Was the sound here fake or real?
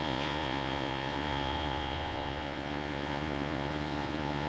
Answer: fake